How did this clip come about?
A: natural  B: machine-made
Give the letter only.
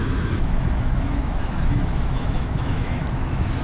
B